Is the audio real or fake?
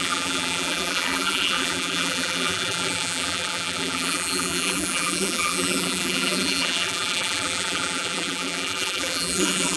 fake